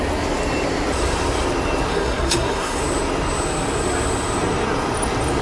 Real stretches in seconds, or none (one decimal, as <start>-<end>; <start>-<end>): 0.0-1.9; 2.8-5.4